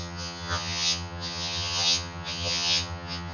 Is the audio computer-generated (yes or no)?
yes